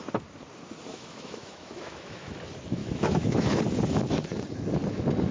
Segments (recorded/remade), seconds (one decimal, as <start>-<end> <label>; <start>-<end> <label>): 0.0-0.9 recorded; 0.9-2.3 remade; 2.3-2.8 recorded; 2.8-3.6 remade; 3.6-5.3 recorded